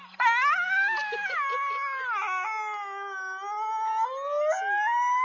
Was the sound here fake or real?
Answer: real